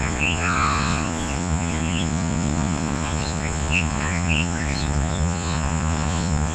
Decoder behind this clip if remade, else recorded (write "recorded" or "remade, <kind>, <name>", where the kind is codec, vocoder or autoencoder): remade, vocoder, Vocos